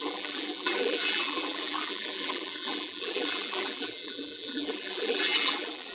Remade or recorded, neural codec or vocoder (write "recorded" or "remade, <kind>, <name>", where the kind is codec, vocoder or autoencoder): remade, vocoder, BigVGAN v2